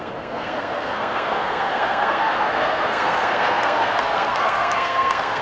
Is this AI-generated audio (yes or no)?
yes